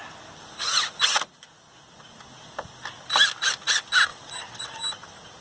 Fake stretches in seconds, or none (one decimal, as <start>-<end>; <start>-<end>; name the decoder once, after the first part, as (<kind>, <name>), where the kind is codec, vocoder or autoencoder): 4.1-4.8 (vocoder, WaveNeXt)

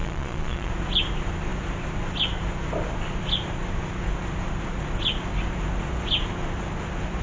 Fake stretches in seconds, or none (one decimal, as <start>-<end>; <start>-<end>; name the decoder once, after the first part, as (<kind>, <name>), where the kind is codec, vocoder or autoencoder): 0.0-0.7 (vocoder, Vocos)

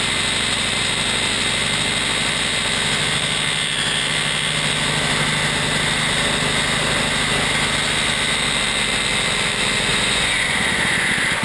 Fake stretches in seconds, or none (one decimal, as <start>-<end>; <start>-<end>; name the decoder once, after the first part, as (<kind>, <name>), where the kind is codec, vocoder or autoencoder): 9.9-11.4 (vocoder, Vocos)